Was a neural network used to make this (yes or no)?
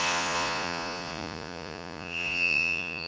yes